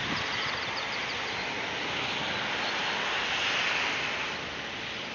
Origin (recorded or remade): recorded